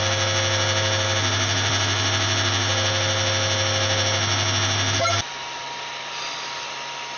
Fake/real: real